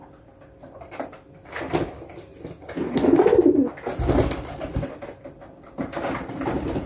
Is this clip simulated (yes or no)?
no